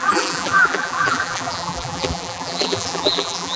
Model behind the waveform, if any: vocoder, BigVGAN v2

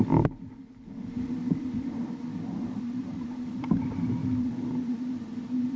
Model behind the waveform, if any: vocoder, BigVGAN v2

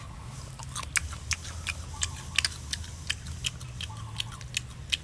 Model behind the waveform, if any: none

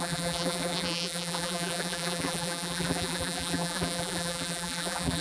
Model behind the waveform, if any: vocoder, BigVGAN v2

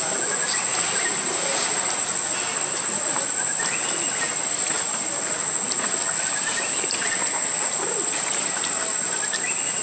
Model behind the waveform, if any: none